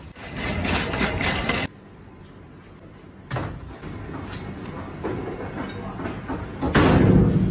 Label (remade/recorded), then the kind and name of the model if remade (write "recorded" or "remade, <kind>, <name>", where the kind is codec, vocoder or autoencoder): recorded